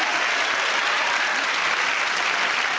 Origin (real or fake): real